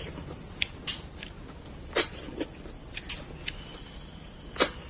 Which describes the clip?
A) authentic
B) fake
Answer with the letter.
A